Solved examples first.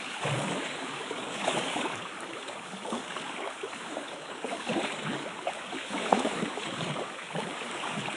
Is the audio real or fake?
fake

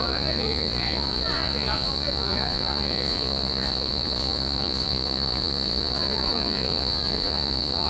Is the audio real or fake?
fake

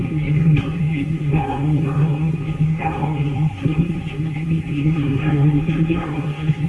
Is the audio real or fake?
fake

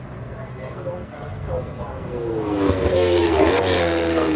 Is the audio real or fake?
fake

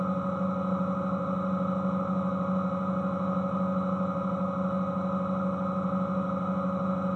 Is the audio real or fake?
real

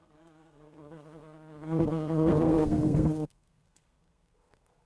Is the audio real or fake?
fake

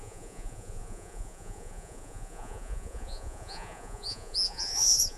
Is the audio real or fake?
fake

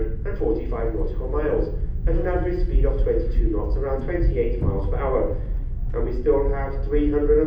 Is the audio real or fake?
real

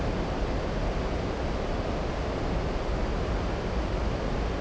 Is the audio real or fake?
real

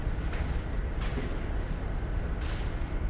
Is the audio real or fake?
real